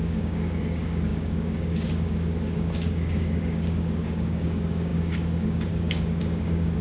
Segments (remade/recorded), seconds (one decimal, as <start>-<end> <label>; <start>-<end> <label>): 0.0-6.8 remade